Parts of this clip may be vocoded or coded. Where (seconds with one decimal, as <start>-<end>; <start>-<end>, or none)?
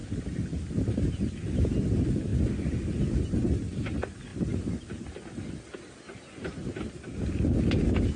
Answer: none